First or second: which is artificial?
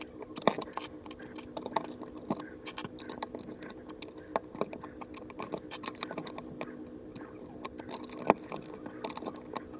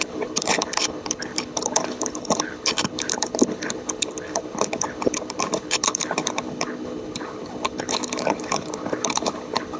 second